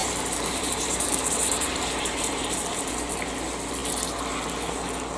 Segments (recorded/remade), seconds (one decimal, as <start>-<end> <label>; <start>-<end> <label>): 0.0-2.9 remade; 2.9-5.2 recorded